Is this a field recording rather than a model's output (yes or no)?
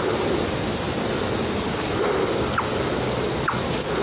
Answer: yes